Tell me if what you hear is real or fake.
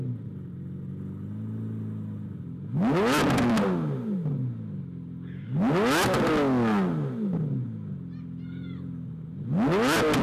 real